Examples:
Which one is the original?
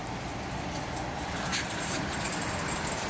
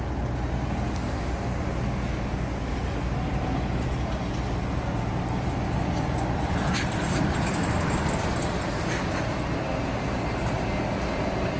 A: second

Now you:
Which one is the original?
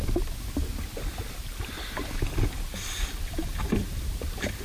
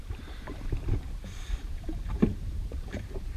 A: first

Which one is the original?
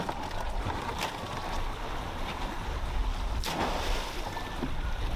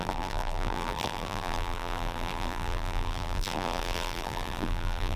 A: first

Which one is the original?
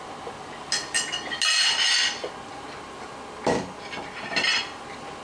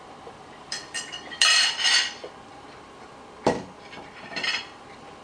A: first